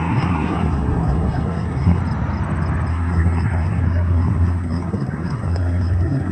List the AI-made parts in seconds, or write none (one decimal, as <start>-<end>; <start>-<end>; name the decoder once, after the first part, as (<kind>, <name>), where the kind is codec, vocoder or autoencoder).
0.0-2.0 (codec, SNAC); 2.9-6.3